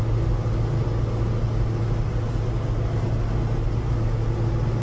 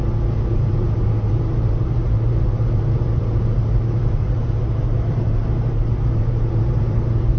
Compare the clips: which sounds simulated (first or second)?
second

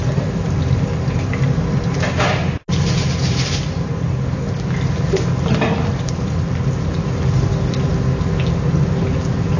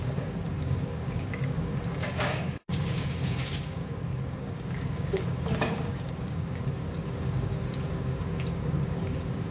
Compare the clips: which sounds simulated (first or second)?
second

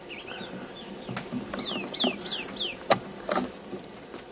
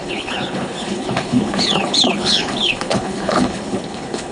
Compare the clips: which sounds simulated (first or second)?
second